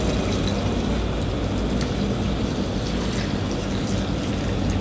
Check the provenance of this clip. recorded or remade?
recorded